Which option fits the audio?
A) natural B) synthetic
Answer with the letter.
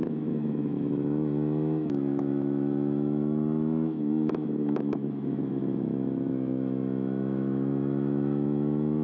B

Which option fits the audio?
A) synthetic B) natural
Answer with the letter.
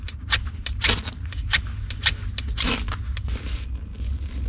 B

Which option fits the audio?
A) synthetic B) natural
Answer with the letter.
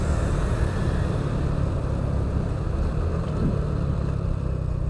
B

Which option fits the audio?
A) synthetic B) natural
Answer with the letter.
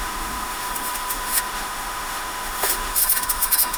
A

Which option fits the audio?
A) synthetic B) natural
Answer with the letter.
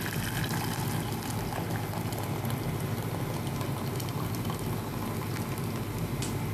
B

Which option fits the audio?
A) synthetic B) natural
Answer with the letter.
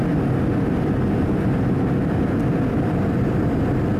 B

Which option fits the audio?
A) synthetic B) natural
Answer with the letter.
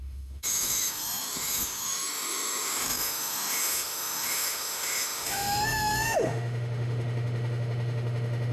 A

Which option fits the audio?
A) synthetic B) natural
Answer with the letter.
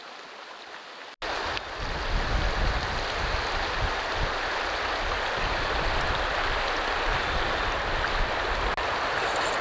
B